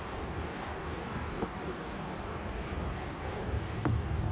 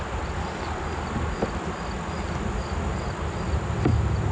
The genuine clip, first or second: second